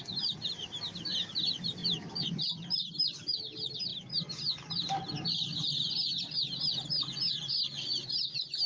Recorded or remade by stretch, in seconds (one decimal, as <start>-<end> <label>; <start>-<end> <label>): 0.0-8.7 recorded